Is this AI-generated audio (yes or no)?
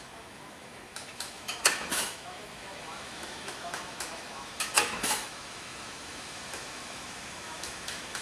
yes